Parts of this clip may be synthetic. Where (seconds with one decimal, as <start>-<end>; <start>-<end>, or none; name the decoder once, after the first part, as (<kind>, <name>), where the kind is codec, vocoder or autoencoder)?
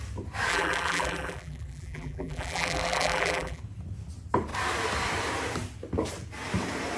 0.5-3.6 (vocoder, BigVGAN v2)